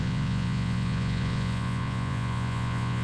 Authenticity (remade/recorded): remade